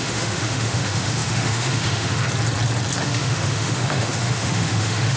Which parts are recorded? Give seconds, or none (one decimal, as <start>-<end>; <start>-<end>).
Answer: 2.2-3.0